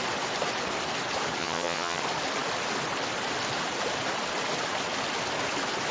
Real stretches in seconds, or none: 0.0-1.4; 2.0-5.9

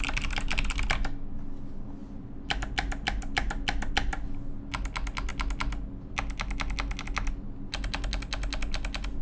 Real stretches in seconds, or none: 0.0-9.2

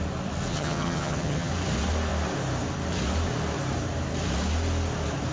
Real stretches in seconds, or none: 0.0-0.5; 1.5-5.3

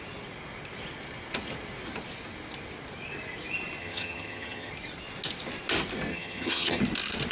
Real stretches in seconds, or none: 0.0-3.8; 4.7-6.1; 6.8-7.3

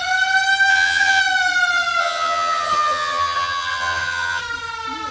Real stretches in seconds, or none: 0.0-0.7; 1.2-2.0; 4.4-5.1

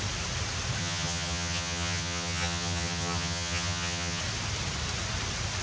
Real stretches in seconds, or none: 0.0-0.8; 4.2-5.6

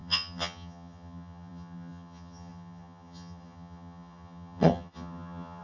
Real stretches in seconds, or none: none

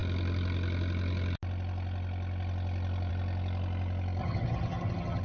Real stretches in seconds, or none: 0.0-4.2